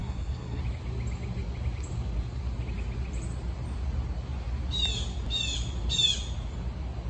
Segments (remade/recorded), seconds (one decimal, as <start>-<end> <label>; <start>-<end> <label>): 0.0-0.6 remade; 0.6-7.1 recorded